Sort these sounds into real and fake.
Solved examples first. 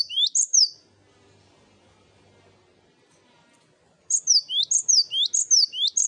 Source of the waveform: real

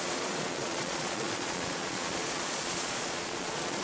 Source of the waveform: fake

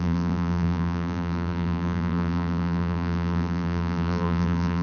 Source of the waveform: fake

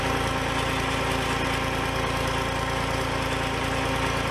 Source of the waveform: real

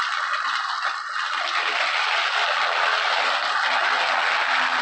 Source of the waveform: real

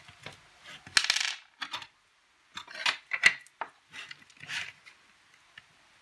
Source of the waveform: real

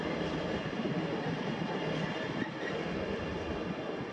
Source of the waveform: real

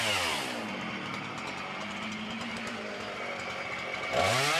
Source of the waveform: real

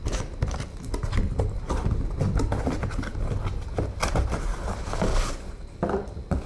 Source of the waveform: real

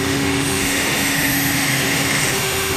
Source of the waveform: fake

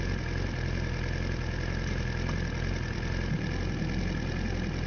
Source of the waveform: real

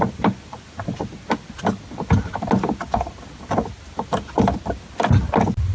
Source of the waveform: real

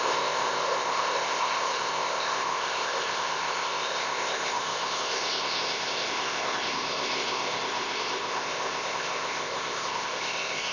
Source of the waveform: fake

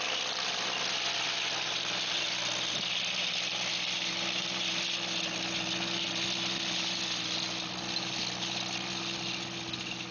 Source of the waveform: real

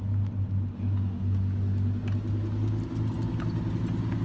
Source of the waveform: real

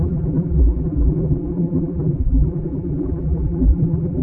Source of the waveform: fake